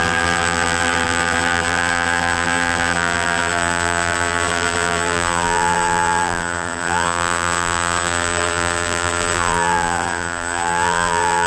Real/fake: fake